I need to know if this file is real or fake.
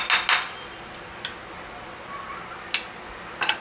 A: real